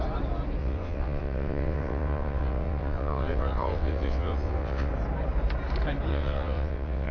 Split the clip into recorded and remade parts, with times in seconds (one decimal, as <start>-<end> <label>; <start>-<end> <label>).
0.0-0.6 recorded; 0.6-4.9 remade; 4.9-6.1 recorded; 6.1-7.1 remade

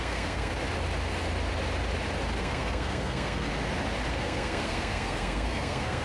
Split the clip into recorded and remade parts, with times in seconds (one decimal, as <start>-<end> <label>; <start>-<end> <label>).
0.0-0.5 remade; 0.5-2.4 recorded; 2.4-3.5 remade; 3.5-4.1 recorded; 4.1-6.0 remade

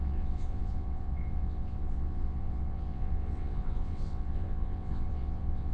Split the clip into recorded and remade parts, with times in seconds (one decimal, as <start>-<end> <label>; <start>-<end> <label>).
0.0-5.7 remade

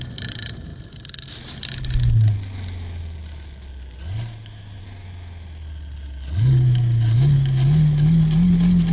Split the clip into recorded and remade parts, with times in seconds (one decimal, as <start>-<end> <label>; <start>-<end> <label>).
0.0-8.9 recorded